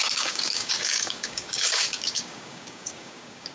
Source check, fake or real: fake